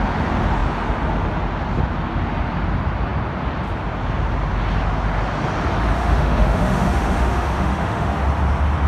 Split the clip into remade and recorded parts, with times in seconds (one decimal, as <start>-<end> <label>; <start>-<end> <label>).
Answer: 0.0-6.0 recorded; 6.0-8.2 remade; 8.2-8.9 recorded